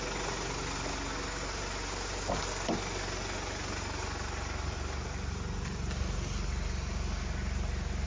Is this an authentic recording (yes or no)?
yes